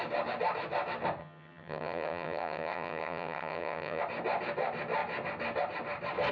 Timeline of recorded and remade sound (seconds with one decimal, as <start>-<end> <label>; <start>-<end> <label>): 0.0-1.2 recorded; 1.2-4.0 remade; 4.0-6.3 recorded